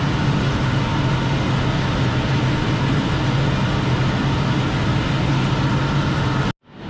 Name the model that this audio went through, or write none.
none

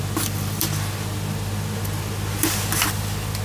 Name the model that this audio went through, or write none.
none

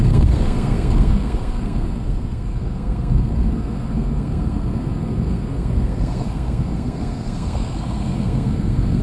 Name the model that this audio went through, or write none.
codec, SNAC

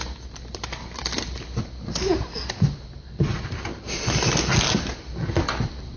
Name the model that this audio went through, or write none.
none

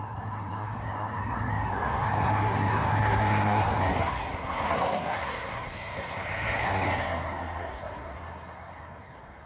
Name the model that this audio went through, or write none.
codec, SNAC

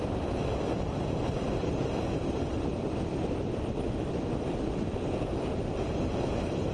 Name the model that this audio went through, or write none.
vocoder, BigVGAN v2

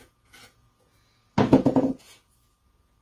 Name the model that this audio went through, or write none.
vocoder, Vocos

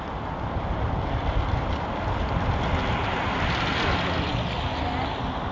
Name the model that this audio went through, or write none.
none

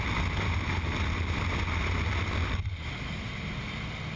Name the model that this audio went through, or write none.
none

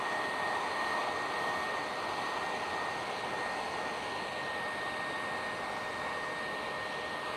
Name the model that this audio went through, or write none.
none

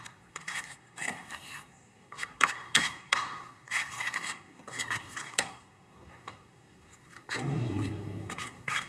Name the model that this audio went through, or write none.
codec, SNAC